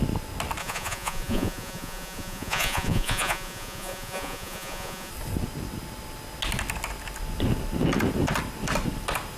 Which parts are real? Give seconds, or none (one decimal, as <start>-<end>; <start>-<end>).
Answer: 0.0-0.6; 5.1-9.4